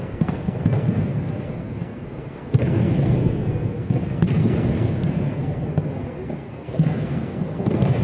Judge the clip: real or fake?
fake